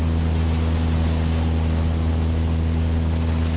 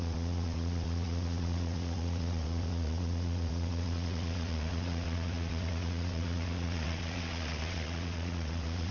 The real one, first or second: first